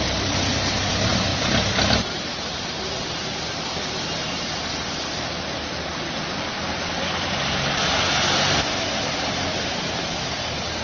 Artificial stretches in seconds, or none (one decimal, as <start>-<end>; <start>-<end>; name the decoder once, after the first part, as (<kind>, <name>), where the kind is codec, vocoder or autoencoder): none